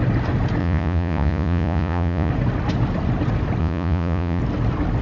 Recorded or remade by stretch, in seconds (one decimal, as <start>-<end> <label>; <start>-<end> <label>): 0.0-0.6 recorded; 0.6-2.3 remade; 2.3-3.6 recorded; 3.6-4.4 remade; 4.4-5.0 recorded